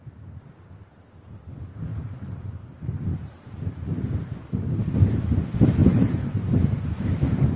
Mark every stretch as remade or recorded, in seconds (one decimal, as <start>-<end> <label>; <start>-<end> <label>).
0.0-1.9 recorded; 1.9-4.8 remade; 4.8-5.8 recorded; 5.8-6.5 remade; 6.5-7.6 recorded